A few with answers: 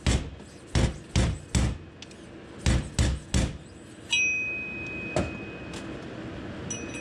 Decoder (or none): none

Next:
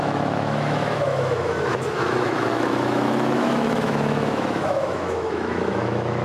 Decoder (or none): autoencoder, DAC-VAE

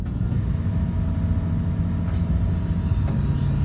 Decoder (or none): none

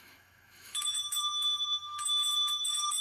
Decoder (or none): autoencoder, DAC-VAE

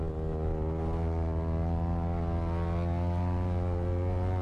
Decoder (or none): none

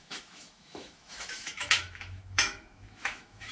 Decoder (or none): autoencoder, DAC-VAE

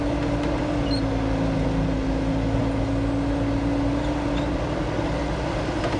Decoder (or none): none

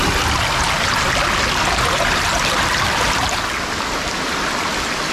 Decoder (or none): none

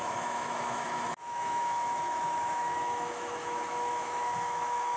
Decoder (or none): autoencoder, DAC-VAE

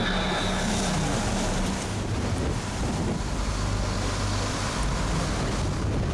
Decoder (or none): none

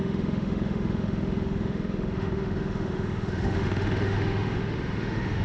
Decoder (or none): autoencoder, DAC-VAE